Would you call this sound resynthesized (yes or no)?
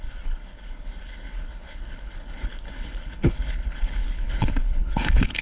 yes